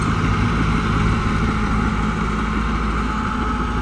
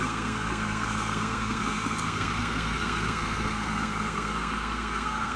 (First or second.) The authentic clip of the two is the first